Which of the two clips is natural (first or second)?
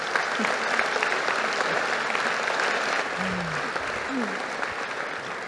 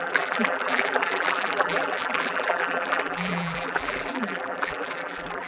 first